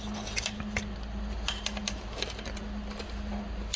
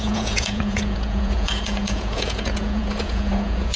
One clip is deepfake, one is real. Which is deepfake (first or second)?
second